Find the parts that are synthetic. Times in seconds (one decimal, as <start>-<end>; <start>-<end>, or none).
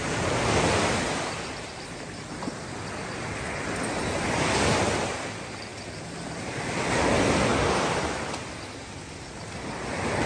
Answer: none